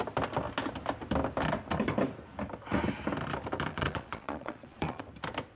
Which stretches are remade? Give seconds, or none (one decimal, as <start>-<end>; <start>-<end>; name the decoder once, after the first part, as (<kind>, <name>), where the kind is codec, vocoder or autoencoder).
3.7-5.0 (vocoder, Vocos)